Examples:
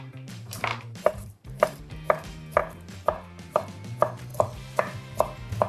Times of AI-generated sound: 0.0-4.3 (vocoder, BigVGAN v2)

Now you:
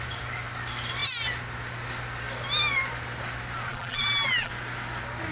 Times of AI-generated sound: 3.7-4.5 (vocoder, BigVGAN v2)

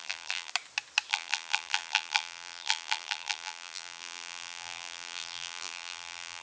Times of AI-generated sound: 0.0-0.5 (vocoder, BigVGAN v2); 1.1-6.4

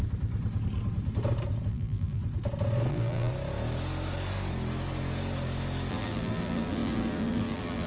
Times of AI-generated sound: 1.7-2.2 (vocoder, BigVGAN v2); 2.9-3.3; 5.9-7.9

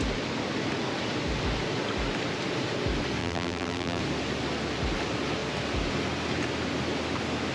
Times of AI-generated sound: 3.2-4.0 (vocoder, BigVGAN v2)